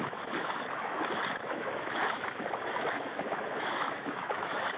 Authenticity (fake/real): fake